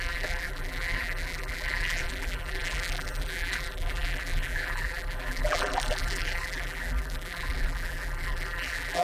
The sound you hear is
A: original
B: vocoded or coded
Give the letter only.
B